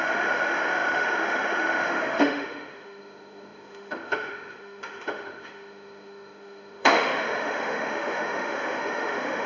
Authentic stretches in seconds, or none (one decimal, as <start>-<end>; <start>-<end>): none